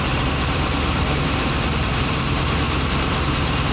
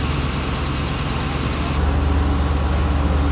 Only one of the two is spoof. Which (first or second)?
first